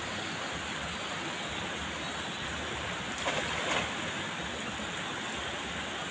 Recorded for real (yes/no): yes